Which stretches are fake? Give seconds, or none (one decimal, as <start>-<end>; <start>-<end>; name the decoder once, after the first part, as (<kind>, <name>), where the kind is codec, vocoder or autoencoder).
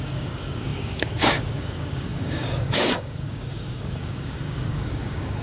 0.0-5.4 (codec, DAC)